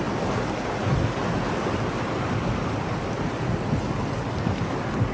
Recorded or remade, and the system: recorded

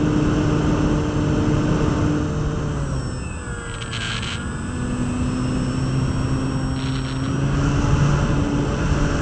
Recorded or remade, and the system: recorded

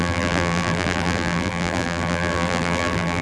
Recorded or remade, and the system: remade, vocoder, BigVGAN v2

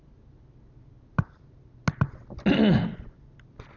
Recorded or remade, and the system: recorded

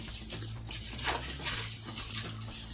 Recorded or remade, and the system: recorded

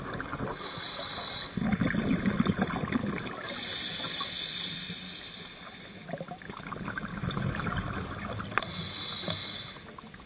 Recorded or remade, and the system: recorded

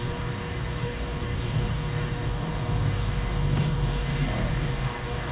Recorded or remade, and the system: remade, codec, DAC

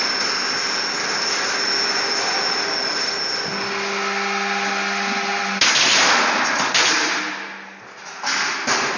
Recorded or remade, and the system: recorded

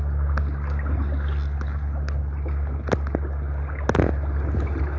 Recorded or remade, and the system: recorded